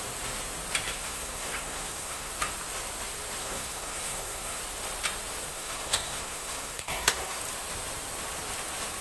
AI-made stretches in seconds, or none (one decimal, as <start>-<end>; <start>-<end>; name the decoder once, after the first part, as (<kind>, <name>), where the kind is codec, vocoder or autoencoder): 0.9-2.3 (codec, SNAC); 3.4-4.6; 5.5-7.4